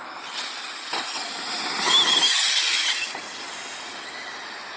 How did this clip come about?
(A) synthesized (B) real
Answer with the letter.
B